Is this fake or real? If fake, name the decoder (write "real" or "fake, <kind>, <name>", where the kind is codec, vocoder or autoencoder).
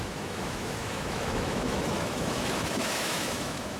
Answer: fake, autoencoder, DAC-VAE